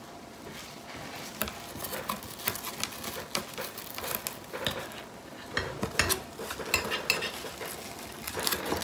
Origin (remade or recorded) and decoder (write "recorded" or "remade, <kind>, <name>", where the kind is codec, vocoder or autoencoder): recorded